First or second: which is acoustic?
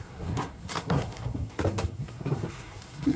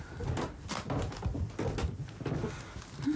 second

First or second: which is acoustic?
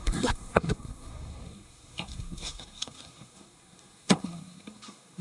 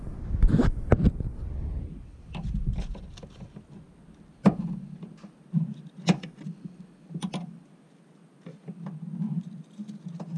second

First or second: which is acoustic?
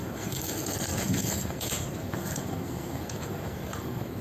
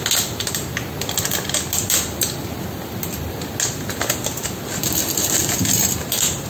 second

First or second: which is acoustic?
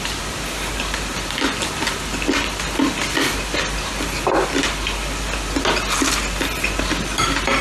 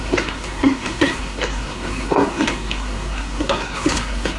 first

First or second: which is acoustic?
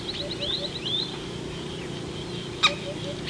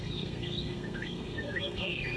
first